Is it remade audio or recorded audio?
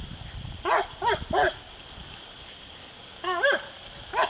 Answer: recorded